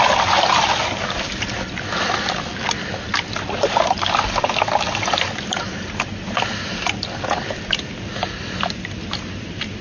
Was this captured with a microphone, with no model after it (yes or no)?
yes